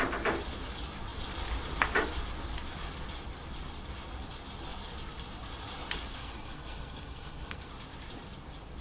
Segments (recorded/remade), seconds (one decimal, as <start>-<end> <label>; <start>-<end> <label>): 0.0-6.2 recorded; 6.2-7.7 remade; 7.7-8.8 recorded